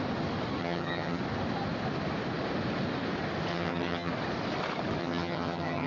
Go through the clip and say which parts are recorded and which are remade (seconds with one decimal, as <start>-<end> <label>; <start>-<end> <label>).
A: 0.0-0.6 recorded; 0.6-1.2 remade; 1.2-3.5 recorded; 3.5-4.1 remade; 4.1-5.0 recorded; 5.0-5.9 remade